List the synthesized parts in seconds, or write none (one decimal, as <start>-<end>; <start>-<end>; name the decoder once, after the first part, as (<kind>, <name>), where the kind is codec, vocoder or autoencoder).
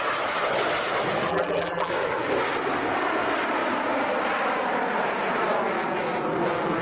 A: 1.3-1.9 (vocoder, BigVGAN v2)